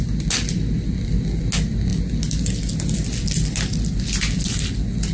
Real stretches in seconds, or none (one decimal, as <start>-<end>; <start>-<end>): 0.0-5.1

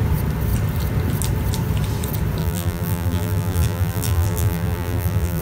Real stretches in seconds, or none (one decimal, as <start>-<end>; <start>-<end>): 0.0-2.4

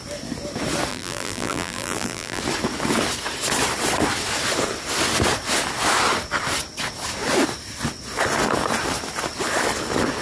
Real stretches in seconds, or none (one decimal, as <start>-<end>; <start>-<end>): 0.0-0.9; 2.4-10.2